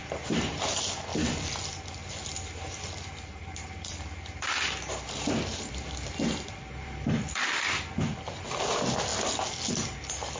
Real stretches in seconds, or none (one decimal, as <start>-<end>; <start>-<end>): 0.0-10.4